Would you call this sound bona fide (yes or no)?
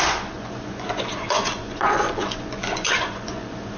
no